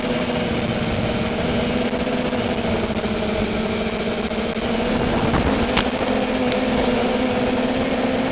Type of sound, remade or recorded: recorded